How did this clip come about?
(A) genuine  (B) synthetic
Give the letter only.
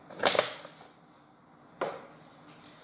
A